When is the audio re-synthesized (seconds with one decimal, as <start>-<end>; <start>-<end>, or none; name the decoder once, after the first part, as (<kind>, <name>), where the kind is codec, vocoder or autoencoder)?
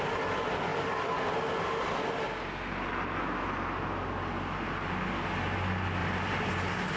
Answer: 6.0-6.5 (vocoder, BigVGAN v2)